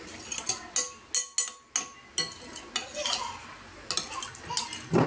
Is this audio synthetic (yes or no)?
no